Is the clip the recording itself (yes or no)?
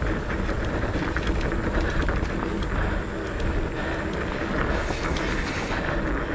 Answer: yes